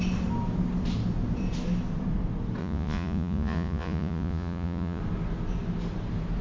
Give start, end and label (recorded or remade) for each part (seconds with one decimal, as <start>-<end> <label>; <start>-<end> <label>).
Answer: 0.0-2.6 recorded; 2.6-5.0 remade; 5.0-6.4 recorded